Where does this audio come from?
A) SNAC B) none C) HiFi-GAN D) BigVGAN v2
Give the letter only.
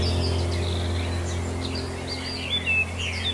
B